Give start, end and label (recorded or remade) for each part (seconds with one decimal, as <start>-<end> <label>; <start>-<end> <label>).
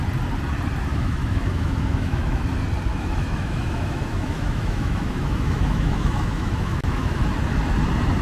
0.0-0.9 recorded; 0.9-2.4 remade; 2.4-2.9 recorded; 2.9-7.2 remade; 7.2-8.2 recorded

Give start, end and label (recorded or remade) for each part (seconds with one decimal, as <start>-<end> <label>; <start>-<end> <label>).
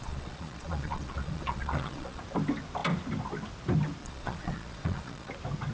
0.0-2.2 remade; 2.2-4.0 recorded; 4.0-5.3 remade; 5.3-5.7 recorded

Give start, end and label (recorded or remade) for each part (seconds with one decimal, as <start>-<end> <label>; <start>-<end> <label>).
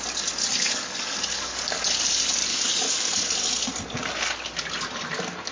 0.0-0.4 recorded; 0.4-1.8 remade; 1.8-2.5 recorded; 2.5-3.1 remade; 3.1-5.5 recorded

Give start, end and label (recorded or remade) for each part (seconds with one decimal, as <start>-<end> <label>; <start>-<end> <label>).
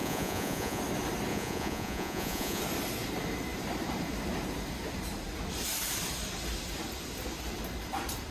0.0-0.8 remade; 0.8-1.3 recorded; 1.3-2.6 remade; 2.6-8.3 recorded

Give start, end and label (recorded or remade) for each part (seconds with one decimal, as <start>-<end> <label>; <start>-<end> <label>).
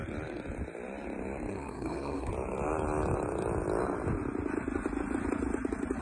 0.0-1.5 recorded; 1.5-2.3 remade; 2.3-6.0 recorded